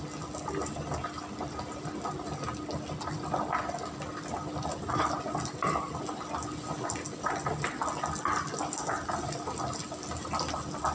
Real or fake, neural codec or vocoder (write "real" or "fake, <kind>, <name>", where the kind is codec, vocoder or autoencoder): real